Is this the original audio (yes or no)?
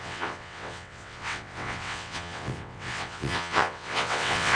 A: no